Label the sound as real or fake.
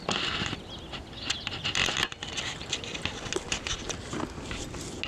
real